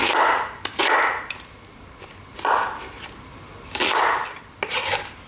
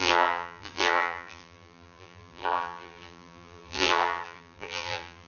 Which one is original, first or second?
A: first